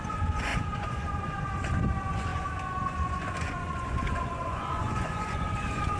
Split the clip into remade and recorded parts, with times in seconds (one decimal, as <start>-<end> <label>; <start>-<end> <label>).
0.0-6.0 remade